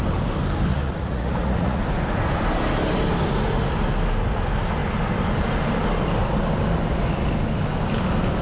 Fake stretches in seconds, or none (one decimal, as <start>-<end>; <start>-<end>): 0.7-1.8